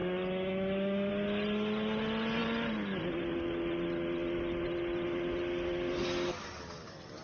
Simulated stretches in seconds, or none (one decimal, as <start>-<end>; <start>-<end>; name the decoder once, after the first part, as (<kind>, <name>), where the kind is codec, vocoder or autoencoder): 0.0-1.1 (autoencoder, DAC-VAE)